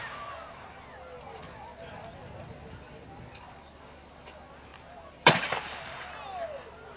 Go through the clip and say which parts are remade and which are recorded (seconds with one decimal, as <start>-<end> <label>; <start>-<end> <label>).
0.0-0.8 remade; 0.8-4.7 recorded; 4.7-6.1 remade; 6.1-7.0 recorded